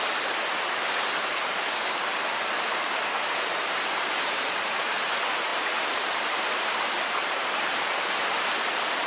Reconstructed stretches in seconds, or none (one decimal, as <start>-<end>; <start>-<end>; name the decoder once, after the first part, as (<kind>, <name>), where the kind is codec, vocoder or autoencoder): 5.5-7.6 (vocoder, BigVGAN v2)